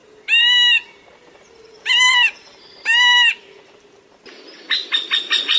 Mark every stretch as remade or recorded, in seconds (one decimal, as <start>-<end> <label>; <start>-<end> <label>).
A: 0.0-5.6 recorded